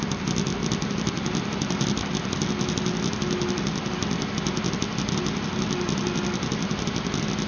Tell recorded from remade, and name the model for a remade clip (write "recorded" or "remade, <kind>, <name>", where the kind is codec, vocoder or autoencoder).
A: recorded